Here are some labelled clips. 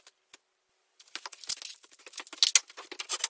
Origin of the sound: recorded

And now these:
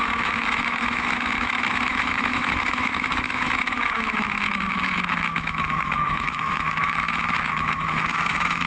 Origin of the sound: remade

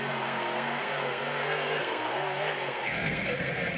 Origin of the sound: remade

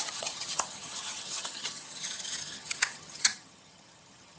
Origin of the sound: remade